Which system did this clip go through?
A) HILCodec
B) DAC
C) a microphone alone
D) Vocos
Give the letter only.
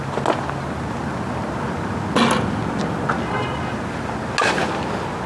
C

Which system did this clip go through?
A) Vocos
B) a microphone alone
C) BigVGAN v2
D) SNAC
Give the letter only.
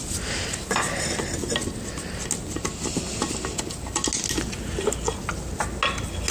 B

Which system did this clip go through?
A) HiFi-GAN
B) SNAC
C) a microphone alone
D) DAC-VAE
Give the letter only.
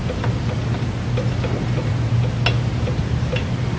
C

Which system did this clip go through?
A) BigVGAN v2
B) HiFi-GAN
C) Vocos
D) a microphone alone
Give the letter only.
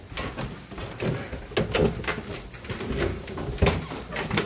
D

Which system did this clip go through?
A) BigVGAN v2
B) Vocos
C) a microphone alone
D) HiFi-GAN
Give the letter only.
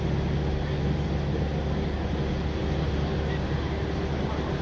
C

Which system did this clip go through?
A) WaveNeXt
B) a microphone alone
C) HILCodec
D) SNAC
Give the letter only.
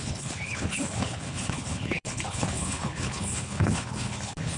C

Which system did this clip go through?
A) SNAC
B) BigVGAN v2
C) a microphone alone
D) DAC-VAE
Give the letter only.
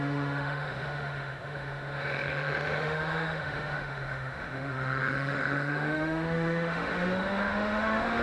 D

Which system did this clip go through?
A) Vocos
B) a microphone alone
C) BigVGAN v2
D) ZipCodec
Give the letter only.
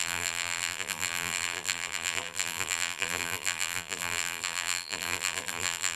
C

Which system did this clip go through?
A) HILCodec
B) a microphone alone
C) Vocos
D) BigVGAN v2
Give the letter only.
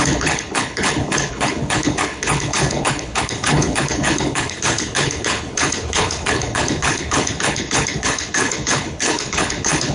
A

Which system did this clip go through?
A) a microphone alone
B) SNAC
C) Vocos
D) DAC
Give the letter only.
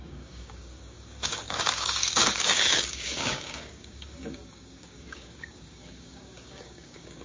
D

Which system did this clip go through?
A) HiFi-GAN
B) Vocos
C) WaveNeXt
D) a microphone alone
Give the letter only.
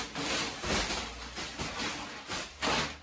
D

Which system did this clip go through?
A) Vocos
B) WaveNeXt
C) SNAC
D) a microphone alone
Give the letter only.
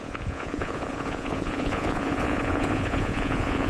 A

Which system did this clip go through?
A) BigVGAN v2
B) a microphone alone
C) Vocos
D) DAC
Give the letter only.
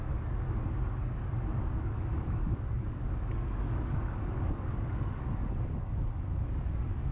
D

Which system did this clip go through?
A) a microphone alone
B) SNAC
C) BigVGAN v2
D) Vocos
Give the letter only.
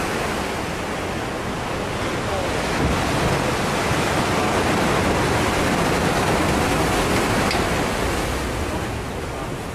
A